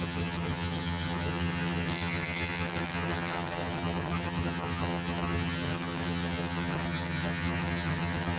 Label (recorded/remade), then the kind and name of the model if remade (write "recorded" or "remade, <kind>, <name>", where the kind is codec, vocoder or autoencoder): remade, vocoder, HiFi-GAN